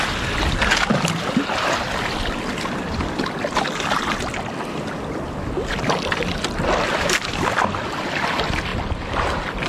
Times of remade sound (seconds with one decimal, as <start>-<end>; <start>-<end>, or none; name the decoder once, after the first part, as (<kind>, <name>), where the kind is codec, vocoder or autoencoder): none